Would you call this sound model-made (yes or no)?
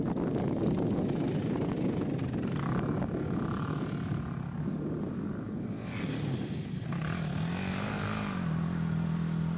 no